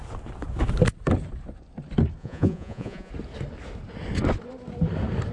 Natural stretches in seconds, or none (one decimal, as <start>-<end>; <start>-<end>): 0.0-2.2; 3.1-5.3